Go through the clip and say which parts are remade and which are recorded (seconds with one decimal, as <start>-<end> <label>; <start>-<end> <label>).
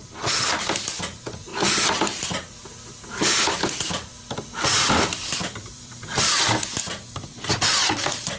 0.0-1.5 recorded; 1.5-6.4 remade; 6.4-8.4 recorded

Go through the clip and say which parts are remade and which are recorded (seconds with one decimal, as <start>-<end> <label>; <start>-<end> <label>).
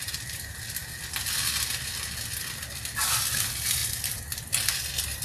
0.0-0.8 remade; 0.8-1.7 recorded; 1.7-5.2 remade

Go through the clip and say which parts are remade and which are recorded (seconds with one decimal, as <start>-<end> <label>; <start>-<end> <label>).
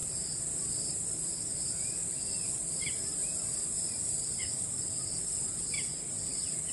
0.0-6.7 recorded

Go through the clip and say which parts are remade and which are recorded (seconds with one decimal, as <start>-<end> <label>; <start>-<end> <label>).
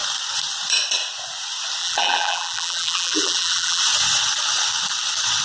0.0-1.8 recorded; 1.8-3.8 remade; 3.8-5.4 recorded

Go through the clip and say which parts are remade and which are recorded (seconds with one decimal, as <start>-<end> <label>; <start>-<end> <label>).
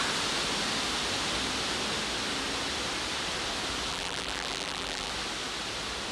0.0-3.9 recorded; 3.9-5.1 remade; 5.1-6.1 recorded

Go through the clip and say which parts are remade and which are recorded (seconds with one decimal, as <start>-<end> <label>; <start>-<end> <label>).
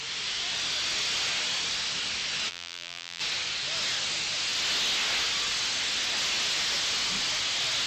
0.0-2.5 recorded; 2.5-3.2 remade; 3.2-7.9 recorded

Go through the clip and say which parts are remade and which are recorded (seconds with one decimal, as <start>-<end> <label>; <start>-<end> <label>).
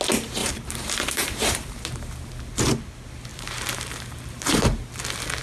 0.0-0.4 recorded; 0.4-2.3 remade; 2.3-3.3 recorded; 3.3-4.6 remade; 4.6-5.4 recorded